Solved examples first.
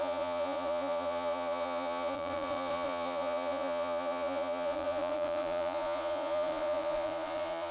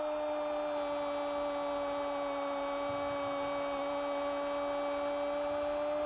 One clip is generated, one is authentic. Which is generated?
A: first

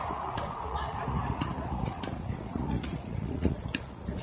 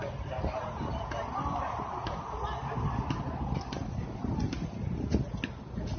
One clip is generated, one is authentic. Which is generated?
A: first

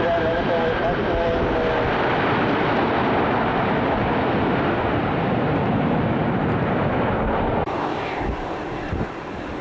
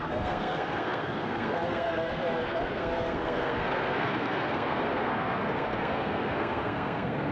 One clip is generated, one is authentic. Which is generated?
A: second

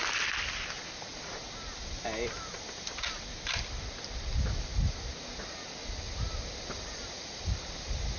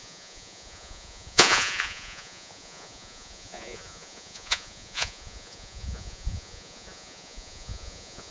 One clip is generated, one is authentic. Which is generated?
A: second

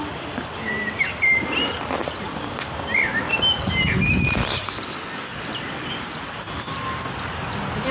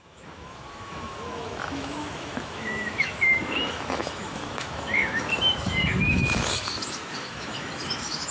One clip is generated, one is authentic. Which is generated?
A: second